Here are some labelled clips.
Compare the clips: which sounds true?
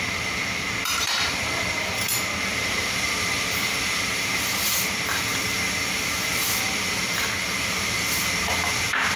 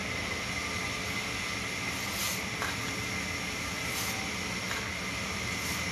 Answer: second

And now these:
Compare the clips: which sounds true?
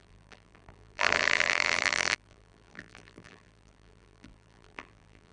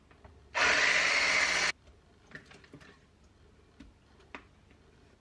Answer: second